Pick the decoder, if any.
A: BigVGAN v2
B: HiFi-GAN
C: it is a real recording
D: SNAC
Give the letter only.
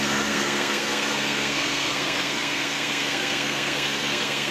D